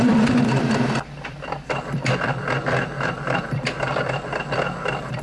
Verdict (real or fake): fake